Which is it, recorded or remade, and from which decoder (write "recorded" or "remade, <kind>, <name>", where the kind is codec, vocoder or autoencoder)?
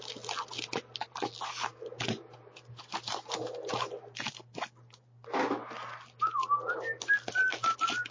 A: recorded